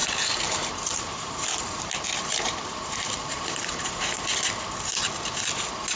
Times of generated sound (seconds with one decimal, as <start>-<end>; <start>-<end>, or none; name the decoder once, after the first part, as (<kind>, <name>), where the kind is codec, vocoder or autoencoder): 0.0-1.9 (vocoder, BigVGAN v2); 2.3-4.1